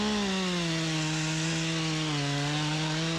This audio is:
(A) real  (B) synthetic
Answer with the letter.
A